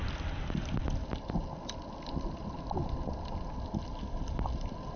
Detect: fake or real real